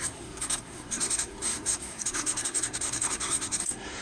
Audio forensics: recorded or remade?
remade